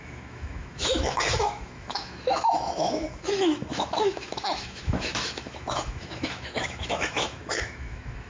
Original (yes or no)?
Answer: no